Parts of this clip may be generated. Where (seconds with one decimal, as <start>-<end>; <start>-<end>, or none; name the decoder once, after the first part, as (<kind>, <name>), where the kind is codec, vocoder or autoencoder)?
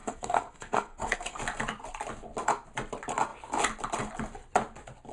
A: 0.0-1.4 (codec, SNAC)